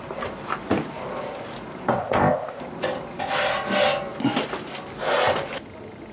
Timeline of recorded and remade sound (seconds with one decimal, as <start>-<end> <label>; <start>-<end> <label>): 0.0-2.0 recorded; 2.0-2.6 remade; 2.6-6.1 recorded